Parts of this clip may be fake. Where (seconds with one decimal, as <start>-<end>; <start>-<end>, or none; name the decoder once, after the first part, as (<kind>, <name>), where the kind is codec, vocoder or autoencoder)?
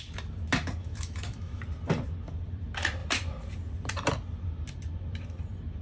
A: 0.8-1.6 (autoencoder, DAC-VAE)